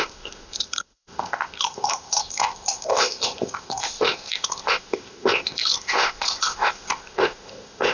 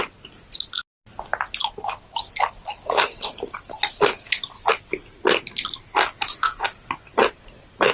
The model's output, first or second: first